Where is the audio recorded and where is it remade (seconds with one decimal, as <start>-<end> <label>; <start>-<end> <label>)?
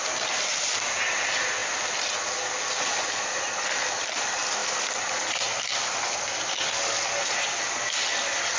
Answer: 0.0-8.6 recorded